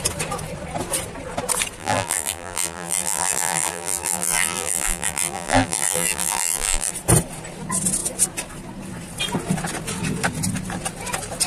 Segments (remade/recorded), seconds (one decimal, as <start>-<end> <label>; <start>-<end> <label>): 0.0-1.8 recorded; 1.8-6.9 remade; 6.9-11.5 recorded